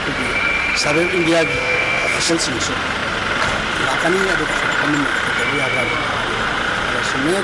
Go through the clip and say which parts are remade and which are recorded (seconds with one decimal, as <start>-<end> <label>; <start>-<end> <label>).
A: 0.0-1.5 recorded; 1.5-2.3 remade; 2.3-7.4 recorded